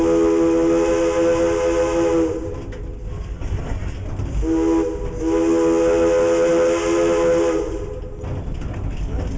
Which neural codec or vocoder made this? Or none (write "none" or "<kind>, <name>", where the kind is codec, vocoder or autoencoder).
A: none